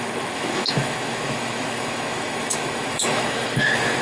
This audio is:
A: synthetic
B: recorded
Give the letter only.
A